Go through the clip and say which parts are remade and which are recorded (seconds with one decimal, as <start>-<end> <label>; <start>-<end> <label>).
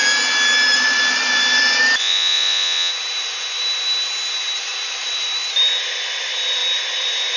0.0-2.0 recorded; 2.0-2.9 remade; 2.9-7.4 recorded